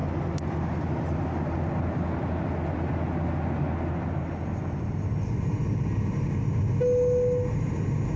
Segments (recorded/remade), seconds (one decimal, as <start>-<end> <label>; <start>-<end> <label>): 0.0-8.2 recorded